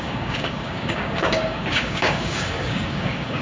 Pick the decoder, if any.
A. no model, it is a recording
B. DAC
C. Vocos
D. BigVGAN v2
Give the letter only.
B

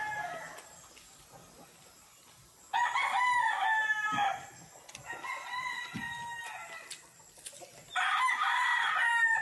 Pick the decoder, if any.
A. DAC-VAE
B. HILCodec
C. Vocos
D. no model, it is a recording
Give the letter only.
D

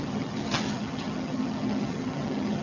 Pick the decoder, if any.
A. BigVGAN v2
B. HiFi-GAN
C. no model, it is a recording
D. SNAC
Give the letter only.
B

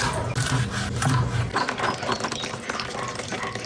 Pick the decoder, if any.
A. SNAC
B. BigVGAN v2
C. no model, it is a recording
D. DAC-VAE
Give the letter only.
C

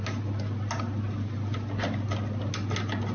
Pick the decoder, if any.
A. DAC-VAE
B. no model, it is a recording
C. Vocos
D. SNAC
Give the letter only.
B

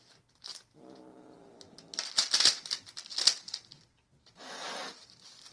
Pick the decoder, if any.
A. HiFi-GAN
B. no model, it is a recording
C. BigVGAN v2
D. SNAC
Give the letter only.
B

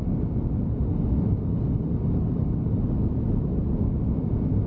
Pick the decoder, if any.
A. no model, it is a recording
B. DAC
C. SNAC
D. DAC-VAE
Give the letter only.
A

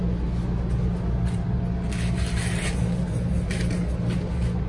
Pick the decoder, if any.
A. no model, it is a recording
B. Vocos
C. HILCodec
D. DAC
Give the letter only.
A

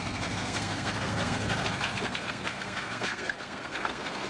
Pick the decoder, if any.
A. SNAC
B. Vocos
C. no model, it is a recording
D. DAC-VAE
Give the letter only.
A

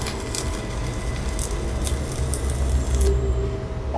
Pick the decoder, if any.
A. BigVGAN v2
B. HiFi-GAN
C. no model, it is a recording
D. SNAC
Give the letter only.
C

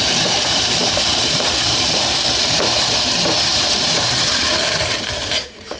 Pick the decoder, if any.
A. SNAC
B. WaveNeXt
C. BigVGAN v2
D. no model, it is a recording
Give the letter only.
C